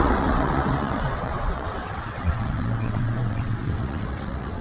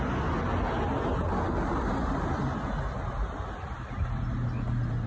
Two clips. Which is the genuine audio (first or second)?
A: second